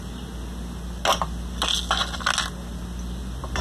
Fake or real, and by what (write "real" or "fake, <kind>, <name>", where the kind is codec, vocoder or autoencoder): real